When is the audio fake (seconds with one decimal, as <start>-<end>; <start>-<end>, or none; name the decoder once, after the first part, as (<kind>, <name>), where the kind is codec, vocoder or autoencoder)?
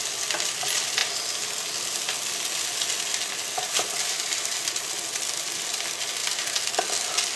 none